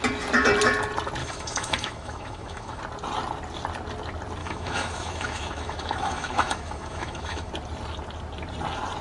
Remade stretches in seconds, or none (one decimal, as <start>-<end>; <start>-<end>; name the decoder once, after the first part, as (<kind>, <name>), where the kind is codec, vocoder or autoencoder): 1.2-2.8 (autoencoder, DAC-VAE); 4.4-7.5